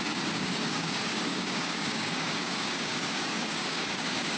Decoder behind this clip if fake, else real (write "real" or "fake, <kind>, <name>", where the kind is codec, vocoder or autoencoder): fake, codec, DAC